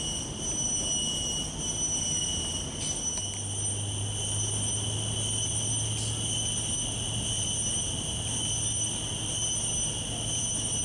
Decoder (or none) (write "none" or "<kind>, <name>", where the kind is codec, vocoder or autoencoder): none